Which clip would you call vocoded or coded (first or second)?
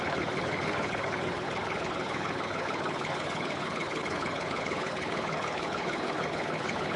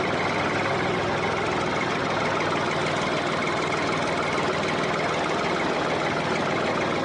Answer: first